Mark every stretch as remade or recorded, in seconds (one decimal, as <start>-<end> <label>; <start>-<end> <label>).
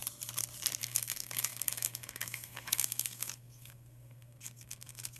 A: 0.0-0.8 recorded; 0.8-5.2 remade